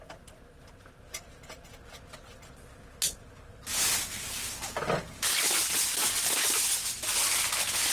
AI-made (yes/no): no